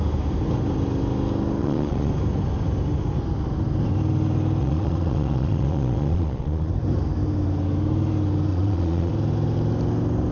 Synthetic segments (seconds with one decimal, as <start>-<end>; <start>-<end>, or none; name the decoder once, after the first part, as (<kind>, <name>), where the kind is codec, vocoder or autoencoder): 1.6-2.1 (vocoder, Vocos); 4.6-6.7; 8.5-9.1